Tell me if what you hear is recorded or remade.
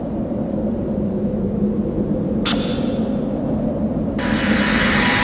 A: recorded